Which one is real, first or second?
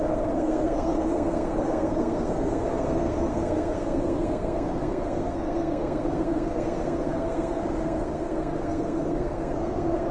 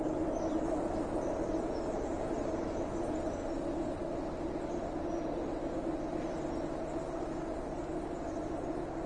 second